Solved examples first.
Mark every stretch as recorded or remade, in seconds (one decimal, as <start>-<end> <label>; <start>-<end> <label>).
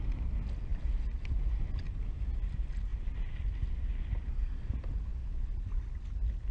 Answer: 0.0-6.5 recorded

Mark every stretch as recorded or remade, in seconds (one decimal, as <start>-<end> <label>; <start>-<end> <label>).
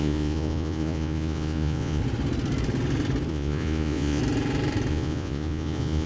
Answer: 0.0-2.0 remade; 2.0-3.3 recorded; 3.3-4.2 remade; 4.2-4.9 recorded; 4.9-6.1 remade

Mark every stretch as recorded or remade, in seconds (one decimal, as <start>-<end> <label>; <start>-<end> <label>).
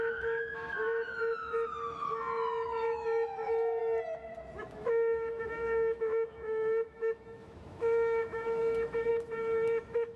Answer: 0.0-3.8 remade; 3.8-4.6 recorded; 4.6-10.2 remade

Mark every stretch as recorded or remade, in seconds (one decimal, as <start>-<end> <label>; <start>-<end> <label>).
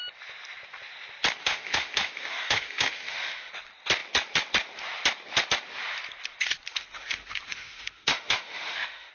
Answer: 0.0-1.4 recorded; 1.4-3.5 remade; 3.5-6.7 recorded; 6.7-9.1 remade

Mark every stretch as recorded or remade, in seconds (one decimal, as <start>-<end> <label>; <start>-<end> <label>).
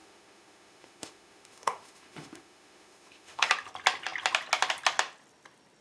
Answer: 0.0-3.5 remade; 3.5-5.8 recorded